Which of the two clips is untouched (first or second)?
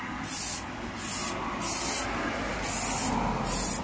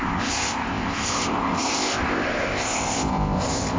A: first